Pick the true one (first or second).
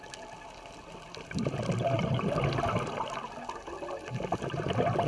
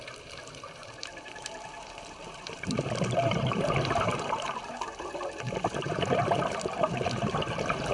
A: first